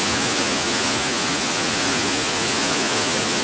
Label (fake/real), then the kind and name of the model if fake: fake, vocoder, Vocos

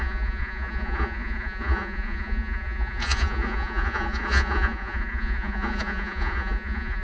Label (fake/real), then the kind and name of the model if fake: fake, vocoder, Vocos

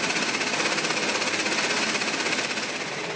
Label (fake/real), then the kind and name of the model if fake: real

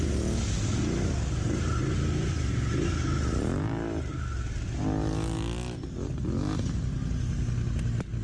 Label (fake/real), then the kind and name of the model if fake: real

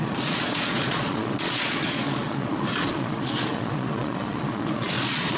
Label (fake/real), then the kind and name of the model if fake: fake, vocoder, Vocos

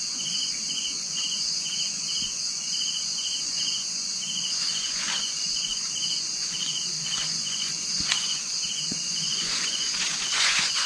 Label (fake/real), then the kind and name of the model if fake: fake, vocoder, Vocos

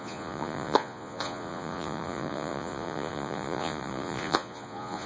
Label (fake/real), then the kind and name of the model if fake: fake, vocoder, Vocos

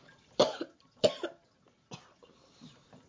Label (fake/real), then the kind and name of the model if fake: real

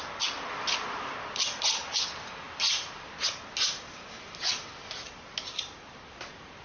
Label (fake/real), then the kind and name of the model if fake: real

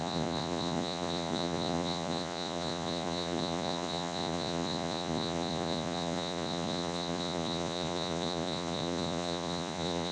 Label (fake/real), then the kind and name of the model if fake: fake, vocoder, Vocos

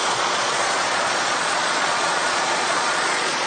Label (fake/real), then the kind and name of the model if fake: fake, vocoder, Vocos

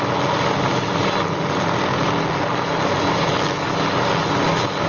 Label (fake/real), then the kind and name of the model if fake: real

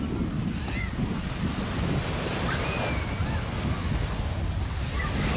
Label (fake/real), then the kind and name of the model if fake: real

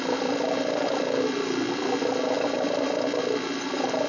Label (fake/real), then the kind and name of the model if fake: real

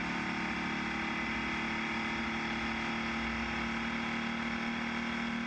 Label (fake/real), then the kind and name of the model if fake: real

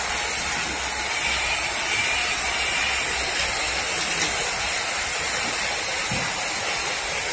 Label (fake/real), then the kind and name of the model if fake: real